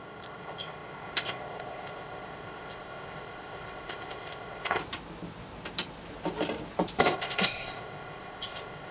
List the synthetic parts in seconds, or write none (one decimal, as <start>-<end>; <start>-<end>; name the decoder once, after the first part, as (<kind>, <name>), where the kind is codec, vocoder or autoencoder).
0.0-4.8 (codec, ZipCodec); 7.0-8.9